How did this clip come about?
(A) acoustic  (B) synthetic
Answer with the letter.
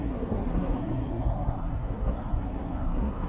B